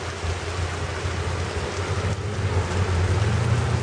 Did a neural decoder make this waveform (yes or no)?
no